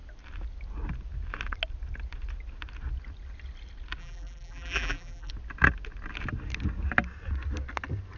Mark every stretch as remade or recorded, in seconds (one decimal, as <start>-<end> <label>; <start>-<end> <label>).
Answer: 0.0-4.0 recorded; 4.0-5.3 remade; 5.3-8.2 recorded